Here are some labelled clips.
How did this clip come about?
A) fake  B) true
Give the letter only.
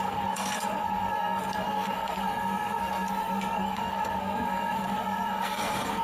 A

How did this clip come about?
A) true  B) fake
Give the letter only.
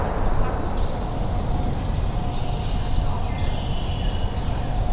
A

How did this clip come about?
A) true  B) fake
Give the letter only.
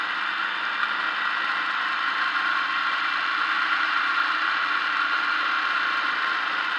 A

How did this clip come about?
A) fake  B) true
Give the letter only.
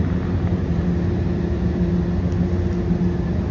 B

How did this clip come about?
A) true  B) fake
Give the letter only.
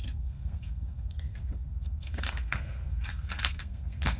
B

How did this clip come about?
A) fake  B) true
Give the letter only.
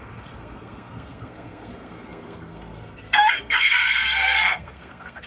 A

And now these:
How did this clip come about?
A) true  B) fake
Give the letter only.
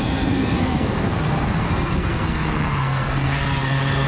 B